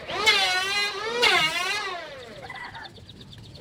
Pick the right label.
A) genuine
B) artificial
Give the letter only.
A